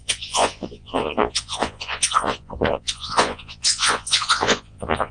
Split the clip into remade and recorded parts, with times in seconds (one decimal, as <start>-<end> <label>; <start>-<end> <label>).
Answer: 0.0-5.1 remade